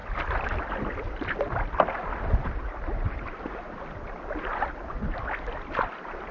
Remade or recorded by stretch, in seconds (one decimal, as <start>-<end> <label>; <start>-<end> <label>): 0.0-6.3 recorded